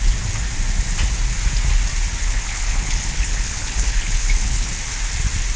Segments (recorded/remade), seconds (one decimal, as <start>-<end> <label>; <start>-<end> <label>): 0.0-2.2 recorded; 2.2-4.7 remade; 4.7-5.6 recorded